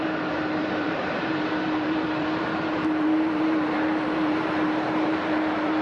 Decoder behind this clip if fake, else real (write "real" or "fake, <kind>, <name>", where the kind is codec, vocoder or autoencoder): fake, vocoder, BigVGAN v2